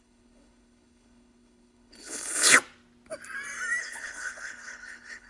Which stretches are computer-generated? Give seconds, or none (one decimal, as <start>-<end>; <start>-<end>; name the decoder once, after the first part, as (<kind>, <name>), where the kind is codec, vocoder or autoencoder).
0.0-2.5 (codec, HILCodec); 3.8-5.3